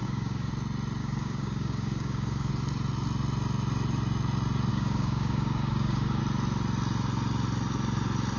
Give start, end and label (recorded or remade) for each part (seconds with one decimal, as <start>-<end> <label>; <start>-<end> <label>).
0.0-0.5 remade; 0.5-1.0 recorded; 1.0-2.5 remade; 2.5-4.7 recorded; 4.7-6.2 remade; 6.2-8.4 recorded